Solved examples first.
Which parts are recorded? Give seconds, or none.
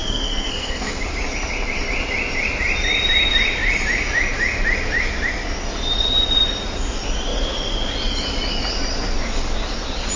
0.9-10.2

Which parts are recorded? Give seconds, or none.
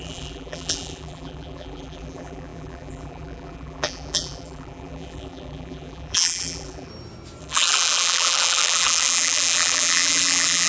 6.9-7.4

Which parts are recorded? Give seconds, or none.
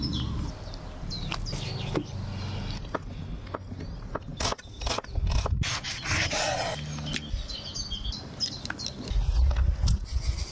0.0-10.5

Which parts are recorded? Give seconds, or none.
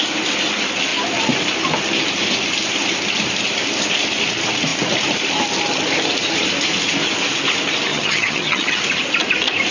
0.0-7.9; 8.8-9.7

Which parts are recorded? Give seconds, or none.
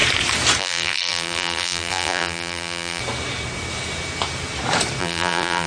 0.0-0.6; 3.0-5.0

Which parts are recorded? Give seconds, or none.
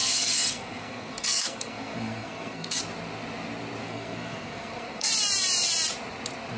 2.8-3.8; 5.1-6.6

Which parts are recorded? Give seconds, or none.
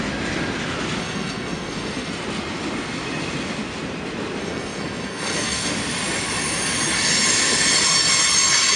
0.0-1.0; 2.1-4.4; 5.7-8.8